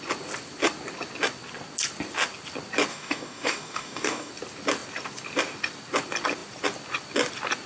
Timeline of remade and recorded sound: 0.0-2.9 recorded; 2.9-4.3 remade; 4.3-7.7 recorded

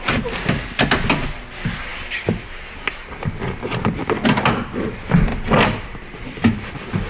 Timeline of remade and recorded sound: 0.0-7.1 recorded

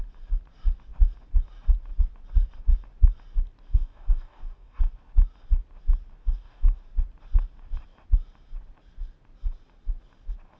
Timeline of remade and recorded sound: 0.0-3.7 recorded; 3.7-4.8 remade; 4.8-6.2 recorded; 6.2-6.8 remade; 6.8-10.6 recorded

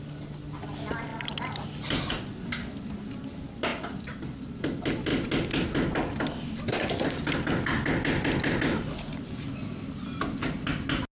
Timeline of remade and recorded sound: 0.0-11.1 recorded

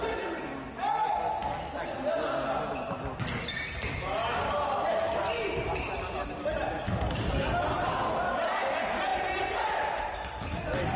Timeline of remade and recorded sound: 0.0-11.0 recorded

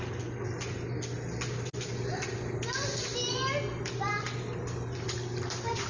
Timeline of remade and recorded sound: 0.0-5.9 recorded

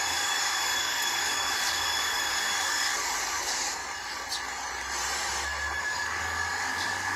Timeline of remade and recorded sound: 0.0-3.8 remade; 3.8-5.8 recorded; 5.8-7.2 remade

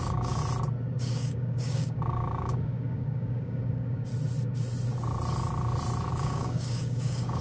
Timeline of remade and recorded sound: 0.0-0.4 remade; 0.4-1.0 recorded; 1.0-4.1 remade; 4.1-6.1 recorded; 6.1-7.4 remade